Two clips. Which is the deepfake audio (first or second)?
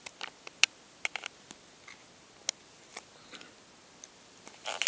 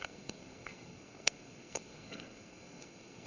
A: second